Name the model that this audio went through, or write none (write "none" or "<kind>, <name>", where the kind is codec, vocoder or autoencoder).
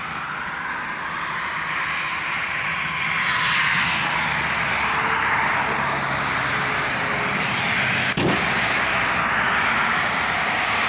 none